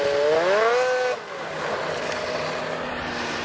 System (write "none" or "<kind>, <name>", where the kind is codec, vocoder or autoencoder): none